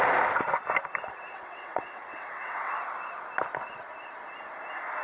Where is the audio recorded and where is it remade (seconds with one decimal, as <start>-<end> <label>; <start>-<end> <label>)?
0.0-1.3 recorded; 1.3-2.7 remade; 2.7-5.0 recorded